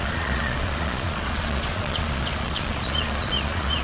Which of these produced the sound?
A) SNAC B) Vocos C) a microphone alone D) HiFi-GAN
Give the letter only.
B